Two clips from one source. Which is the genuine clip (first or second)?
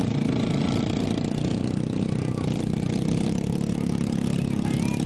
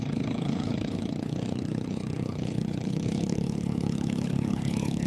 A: first